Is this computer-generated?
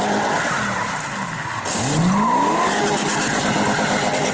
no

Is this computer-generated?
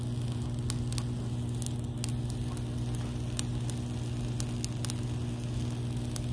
no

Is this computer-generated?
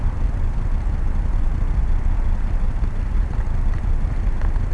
no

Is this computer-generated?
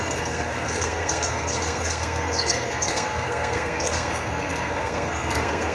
yes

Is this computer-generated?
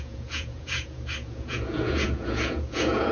yes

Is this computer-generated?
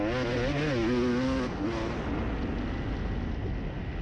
no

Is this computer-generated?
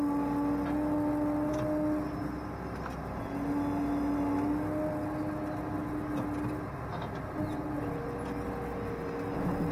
no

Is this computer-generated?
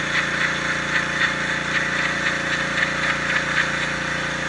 no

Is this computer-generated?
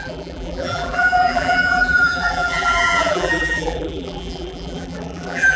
yes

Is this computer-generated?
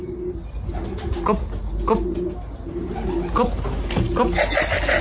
no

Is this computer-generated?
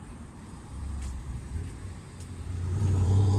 yes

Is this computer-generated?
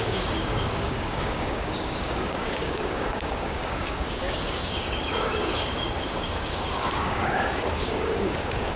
yes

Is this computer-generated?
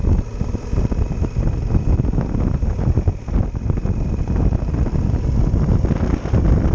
no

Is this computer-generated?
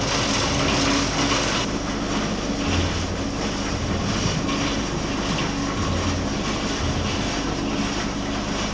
no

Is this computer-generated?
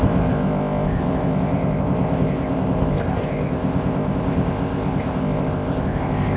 yes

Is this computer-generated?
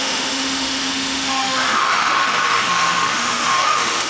yes